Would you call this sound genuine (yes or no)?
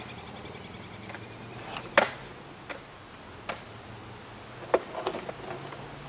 yes